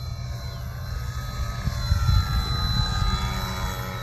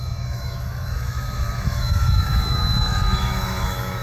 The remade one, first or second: second